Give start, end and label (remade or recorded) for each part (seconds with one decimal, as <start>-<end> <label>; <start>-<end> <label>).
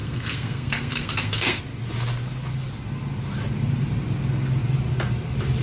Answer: 0.0-1.6 remade; 1.6-5.6 recorded